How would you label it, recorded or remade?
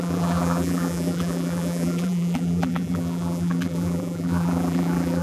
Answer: remade